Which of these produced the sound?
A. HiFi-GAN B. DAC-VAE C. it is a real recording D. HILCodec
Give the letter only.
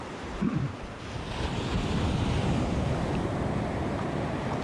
C